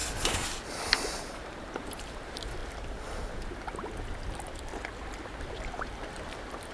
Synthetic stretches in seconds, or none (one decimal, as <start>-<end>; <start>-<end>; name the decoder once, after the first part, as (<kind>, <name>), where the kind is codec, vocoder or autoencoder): 1.4-2.6 (vocoder, BigVGAN v2); 5.7-6.7